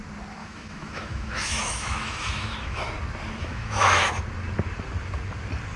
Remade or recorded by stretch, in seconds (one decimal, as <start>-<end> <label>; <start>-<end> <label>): 0.0-0.4 recorded; 0.4-2.8 remade; 2.8-3.4 recorded; 3.4-4.1 remade; 4.1-5.8 recorded